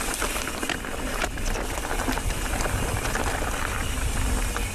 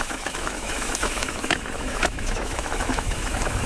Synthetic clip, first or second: second